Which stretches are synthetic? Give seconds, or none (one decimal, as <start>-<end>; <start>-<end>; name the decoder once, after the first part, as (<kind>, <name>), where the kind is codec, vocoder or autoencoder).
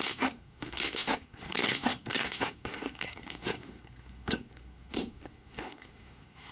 0.0-6.5 (codec, SNAC)